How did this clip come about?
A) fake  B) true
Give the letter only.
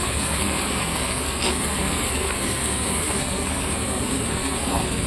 A